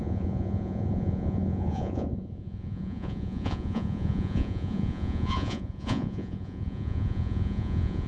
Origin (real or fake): fake